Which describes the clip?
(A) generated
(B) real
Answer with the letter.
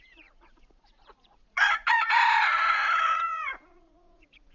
A